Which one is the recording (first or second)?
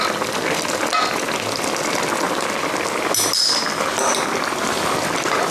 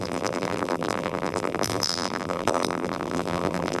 first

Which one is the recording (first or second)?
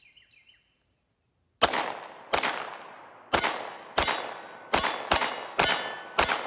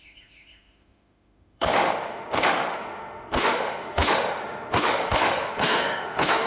first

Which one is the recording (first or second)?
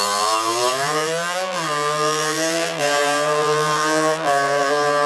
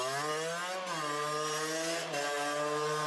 second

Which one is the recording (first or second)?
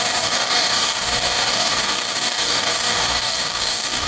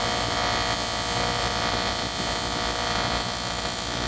second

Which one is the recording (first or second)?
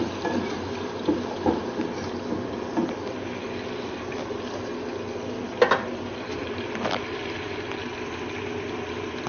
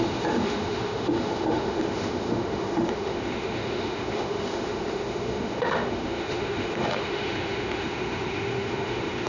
first